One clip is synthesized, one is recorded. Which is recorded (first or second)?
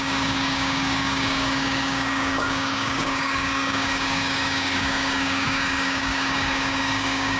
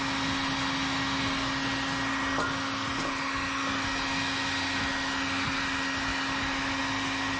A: second